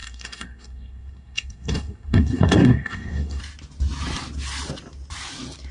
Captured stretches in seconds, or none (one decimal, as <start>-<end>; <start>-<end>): 3.4-5.7